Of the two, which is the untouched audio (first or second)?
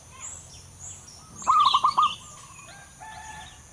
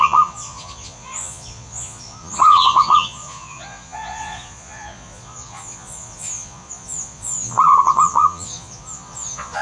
first